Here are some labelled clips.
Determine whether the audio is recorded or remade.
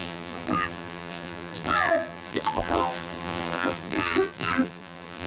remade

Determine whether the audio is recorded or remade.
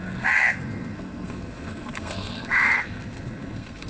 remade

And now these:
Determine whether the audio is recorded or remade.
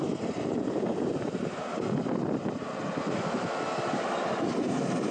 recorded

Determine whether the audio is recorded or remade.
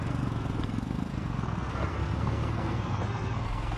remade